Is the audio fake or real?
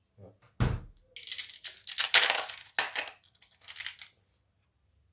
real